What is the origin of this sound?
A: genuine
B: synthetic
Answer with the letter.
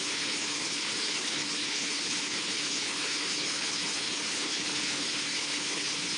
B